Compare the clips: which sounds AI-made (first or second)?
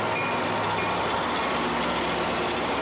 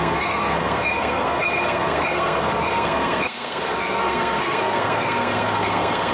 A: second